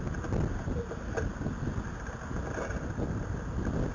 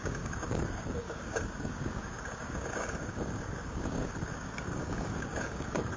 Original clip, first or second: first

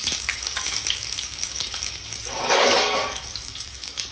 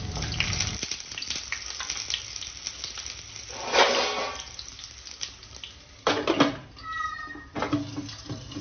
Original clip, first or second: second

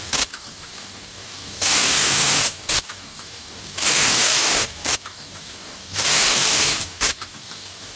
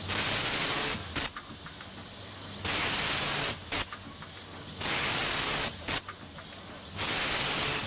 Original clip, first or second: second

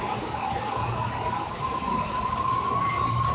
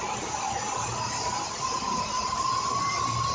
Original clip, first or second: second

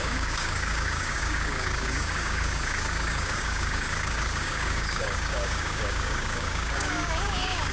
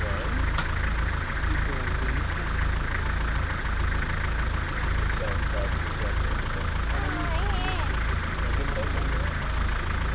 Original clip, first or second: second